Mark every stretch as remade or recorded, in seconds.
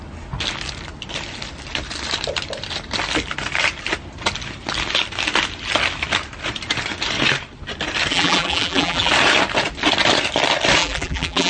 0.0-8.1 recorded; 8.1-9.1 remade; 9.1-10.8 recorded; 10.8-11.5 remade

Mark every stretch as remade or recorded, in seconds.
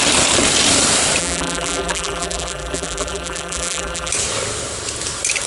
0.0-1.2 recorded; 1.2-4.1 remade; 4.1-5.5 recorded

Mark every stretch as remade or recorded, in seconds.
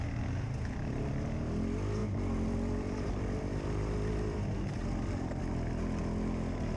0.0-2.0 recorded; 2.0-5.4 remade; 5.4-6.8 recorded